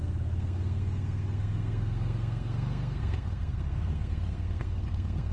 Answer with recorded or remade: remade